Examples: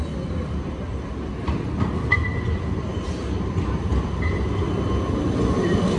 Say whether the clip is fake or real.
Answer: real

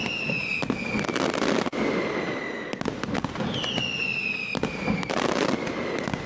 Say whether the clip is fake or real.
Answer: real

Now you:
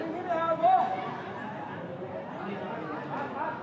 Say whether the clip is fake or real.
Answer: real